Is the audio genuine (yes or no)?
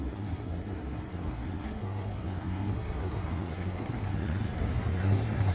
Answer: no